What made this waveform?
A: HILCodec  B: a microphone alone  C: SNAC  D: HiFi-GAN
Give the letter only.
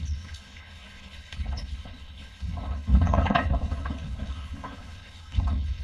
A